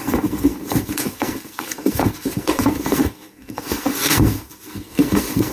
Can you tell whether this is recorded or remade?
remade